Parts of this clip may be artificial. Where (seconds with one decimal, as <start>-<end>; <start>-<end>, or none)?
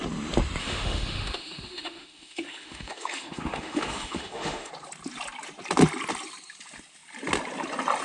0.6-4.7